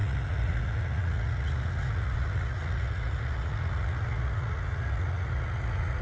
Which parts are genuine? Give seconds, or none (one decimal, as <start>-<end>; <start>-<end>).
none